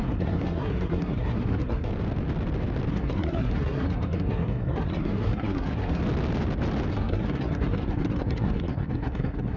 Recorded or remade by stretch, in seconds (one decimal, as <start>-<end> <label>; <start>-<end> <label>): 0.0-1.9 remade; 1.9-2.9 recorded; 2.9-6.0 remade; 6.0-6.9 recorded; 6.9-9.6 remade